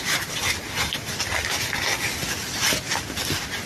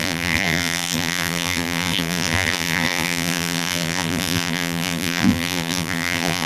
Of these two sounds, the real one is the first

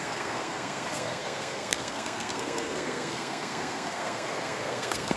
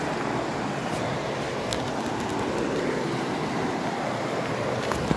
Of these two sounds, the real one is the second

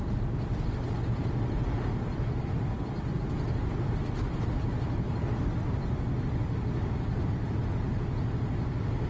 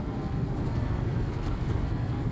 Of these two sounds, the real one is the first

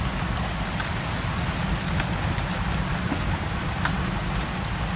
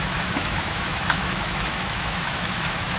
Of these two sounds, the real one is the first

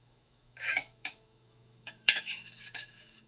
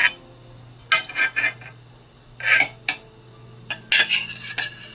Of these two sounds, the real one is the second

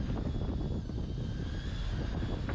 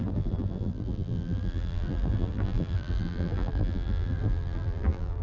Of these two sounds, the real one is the first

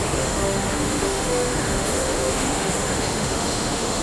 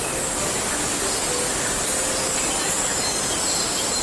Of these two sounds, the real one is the second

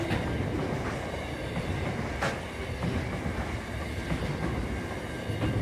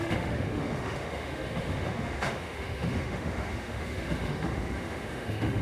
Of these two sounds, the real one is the first